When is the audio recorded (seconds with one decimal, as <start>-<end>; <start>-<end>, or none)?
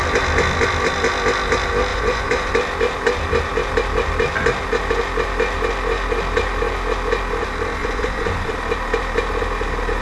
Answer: 0.0-1.9; 2.5-7.8; 8.5-10.0